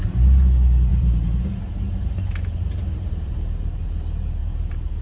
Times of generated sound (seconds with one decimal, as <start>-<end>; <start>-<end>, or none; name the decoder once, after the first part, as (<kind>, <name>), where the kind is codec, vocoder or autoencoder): 0.9-3.5 (vocoder, BigVGAN v2); 4.4-5.0

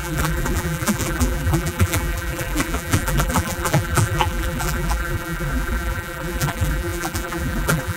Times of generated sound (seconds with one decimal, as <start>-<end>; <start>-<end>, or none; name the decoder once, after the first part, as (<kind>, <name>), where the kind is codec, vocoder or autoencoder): 0.0-8.0 (vocoder, BigVGAN v2)

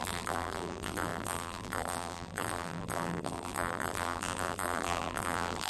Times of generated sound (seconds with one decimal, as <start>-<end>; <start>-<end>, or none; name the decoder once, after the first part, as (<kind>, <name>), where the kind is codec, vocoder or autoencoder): 0.0-5.7 (vocoder, BigVGAN v2)

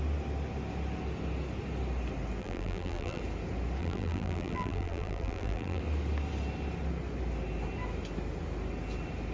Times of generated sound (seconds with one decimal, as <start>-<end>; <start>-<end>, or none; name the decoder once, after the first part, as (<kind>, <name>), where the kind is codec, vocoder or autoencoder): 2.4-3.2 (vocoder, BigVGAN v2); 3.8-5.8